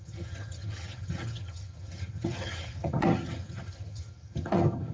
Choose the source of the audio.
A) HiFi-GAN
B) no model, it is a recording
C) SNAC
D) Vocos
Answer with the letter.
A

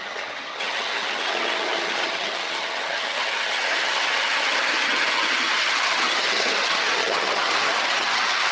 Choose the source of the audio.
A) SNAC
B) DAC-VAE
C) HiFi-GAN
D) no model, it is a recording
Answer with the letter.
C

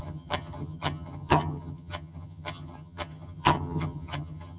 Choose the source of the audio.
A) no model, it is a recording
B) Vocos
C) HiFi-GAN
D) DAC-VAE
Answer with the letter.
C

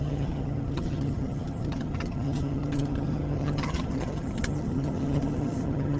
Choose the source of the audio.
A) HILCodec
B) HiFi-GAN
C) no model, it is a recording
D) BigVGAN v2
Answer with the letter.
B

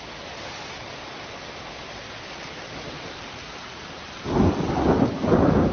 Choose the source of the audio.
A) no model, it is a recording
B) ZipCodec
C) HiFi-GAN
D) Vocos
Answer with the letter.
A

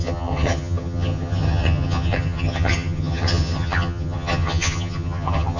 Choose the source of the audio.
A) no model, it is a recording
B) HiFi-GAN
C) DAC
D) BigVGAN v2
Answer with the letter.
B